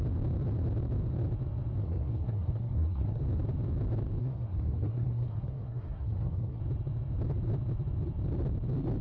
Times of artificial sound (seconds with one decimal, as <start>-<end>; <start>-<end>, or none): 1.8-3.2; 4.2-6.6